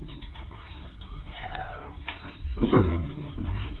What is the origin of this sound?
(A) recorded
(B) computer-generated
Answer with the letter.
B